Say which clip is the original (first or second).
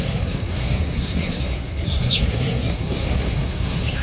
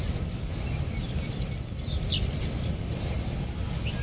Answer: second